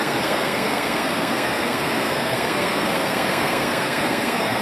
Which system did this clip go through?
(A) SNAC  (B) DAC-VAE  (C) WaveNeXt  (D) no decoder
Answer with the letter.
A